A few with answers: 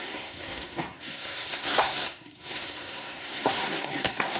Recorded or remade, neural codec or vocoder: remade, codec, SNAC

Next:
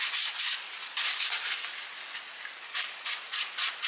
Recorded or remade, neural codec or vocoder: recorded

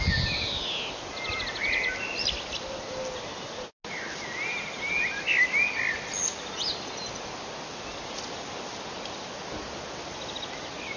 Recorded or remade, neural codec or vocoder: recorded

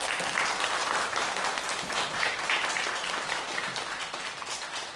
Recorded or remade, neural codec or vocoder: recorded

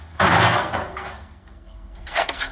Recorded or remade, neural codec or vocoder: remade, codec, SNAC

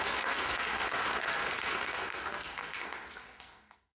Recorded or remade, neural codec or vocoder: remade, codec, SNAC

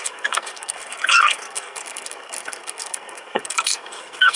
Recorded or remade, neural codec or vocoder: remade, codec, SNAC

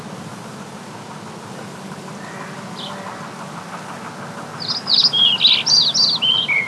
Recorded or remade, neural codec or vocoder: recorded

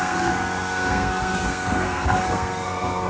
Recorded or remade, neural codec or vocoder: remade, codec, SNAC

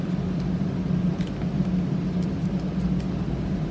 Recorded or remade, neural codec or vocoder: recorded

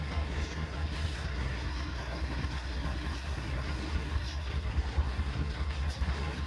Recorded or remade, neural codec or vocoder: remade, codec, SNAC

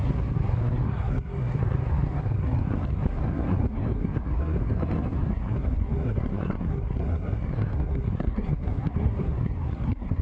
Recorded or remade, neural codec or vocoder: remade, codec, SNAC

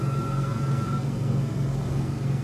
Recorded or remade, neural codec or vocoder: remade, codec, SNAC